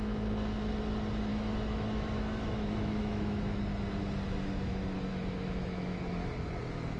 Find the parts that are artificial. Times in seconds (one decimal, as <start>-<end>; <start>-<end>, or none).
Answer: 1.3-3.6; 5.1-6.0